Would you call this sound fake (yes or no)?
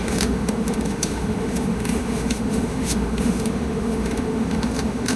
yes